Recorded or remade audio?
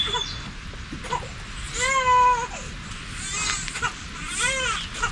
recorded